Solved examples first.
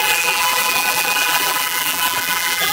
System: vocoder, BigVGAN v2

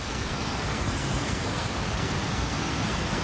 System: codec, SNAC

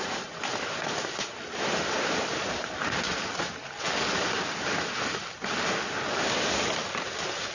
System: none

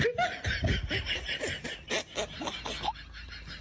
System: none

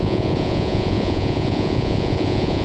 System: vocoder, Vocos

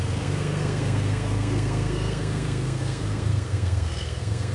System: codec, SNAC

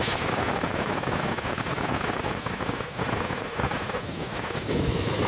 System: autoencoder, DAC-VAE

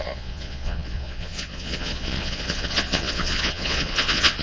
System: vocoder, Vocos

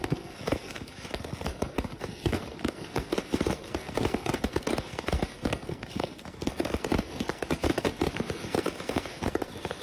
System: codec, SNAC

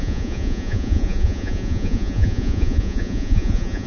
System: vocoder, Vocos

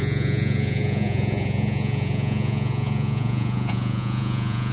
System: vocoder, Vocos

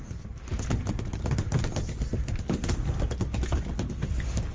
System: none